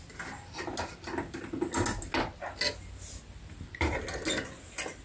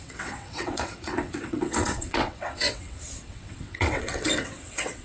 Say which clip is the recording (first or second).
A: first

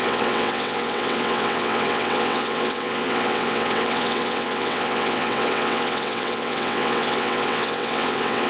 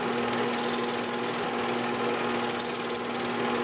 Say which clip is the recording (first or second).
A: second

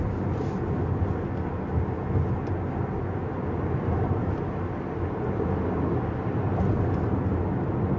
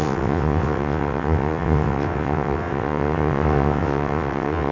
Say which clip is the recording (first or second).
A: first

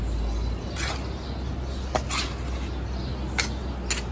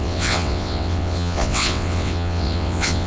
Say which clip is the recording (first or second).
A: first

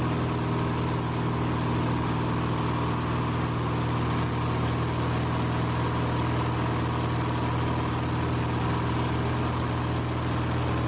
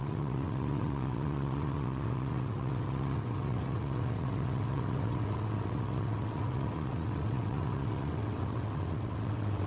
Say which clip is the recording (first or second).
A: first